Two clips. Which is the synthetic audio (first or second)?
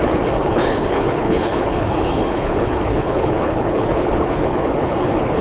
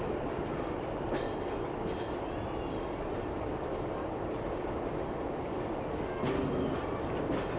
first